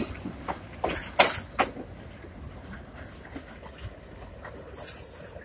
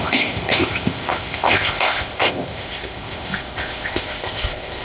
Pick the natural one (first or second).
first